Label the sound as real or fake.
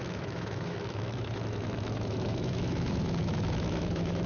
fake